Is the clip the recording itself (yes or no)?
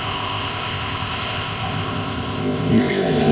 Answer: no